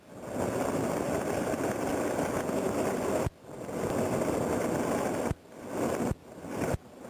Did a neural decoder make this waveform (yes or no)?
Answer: no